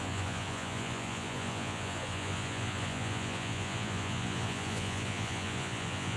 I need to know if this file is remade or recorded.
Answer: remade